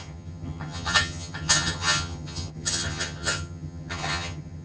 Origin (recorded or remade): remade